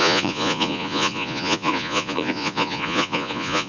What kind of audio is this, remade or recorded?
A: remade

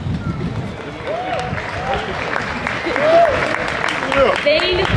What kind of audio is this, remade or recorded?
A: recorded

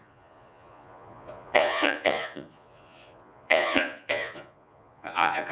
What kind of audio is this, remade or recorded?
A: remade